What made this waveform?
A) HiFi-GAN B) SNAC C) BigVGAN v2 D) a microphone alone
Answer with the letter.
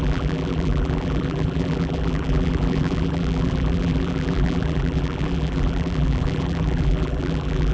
C